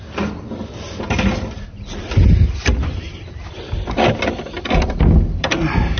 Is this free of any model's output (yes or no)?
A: yes